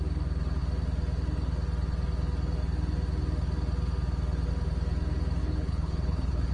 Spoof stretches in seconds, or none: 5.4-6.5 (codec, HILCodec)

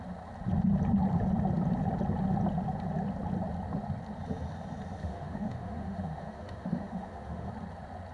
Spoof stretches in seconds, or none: 5.0-7.5 (autoencoder, DAC-VAE)

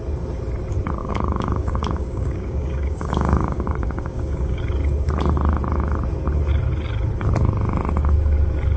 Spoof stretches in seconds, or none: 1.0-4.6 (codec, DAC)